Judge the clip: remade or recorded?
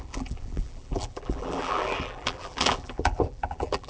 remade